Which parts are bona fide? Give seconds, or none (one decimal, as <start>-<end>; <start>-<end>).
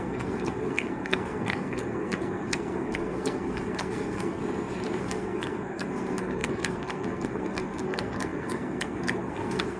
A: 4.4-5.0